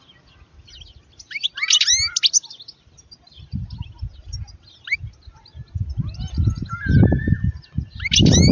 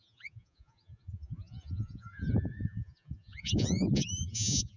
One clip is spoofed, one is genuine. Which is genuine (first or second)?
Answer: first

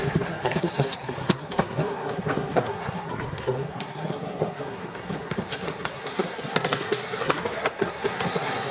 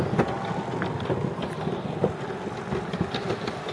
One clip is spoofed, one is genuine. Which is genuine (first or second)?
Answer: second